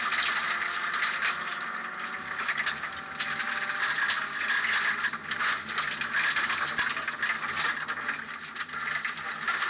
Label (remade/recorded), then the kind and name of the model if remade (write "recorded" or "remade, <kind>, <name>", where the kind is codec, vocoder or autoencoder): recorded